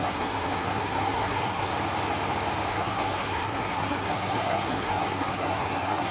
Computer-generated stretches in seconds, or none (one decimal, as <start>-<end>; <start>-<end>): 0.0-1.7; 2.7-6.1